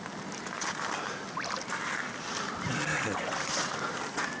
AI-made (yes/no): no